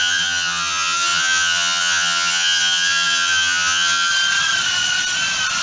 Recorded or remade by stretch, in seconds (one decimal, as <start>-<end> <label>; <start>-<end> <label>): 0.0-4.1 remade; 4.1-5.6 recorded